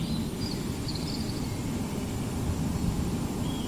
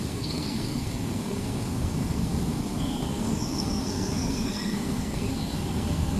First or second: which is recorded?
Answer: first